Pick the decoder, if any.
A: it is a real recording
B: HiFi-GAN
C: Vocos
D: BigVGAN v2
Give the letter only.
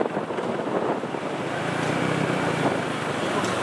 D